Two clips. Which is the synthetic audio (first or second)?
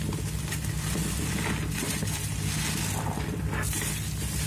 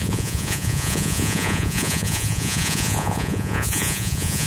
second